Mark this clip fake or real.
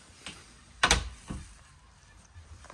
real